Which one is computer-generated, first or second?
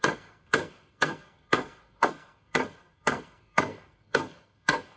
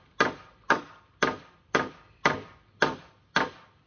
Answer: first